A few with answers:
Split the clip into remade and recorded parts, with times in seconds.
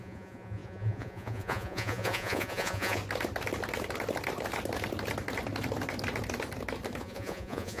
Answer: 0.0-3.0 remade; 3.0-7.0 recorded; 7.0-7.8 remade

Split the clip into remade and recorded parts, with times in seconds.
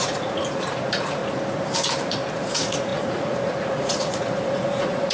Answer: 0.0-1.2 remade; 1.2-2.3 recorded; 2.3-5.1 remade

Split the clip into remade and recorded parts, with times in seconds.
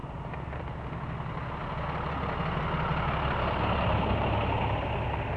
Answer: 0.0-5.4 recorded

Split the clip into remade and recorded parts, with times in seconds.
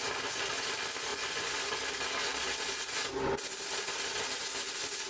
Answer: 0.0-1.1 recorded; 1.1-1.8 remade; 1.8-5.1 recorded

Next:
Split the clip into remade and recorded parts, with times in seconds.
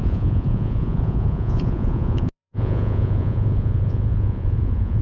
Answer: 0.0-5.0 remade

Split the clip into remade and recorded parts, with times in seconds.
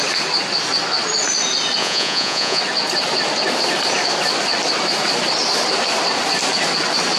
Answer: 0.0-1.8 recorded; 1.8-2.6 remade; 2.6-7.2 recorded